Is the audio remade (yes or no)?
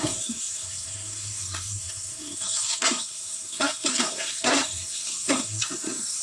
yes